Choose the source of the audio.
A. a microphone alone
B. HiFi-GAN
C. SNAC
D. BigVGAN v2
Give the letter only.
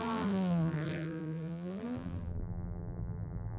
D